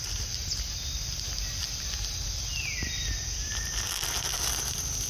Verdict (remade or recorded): recorded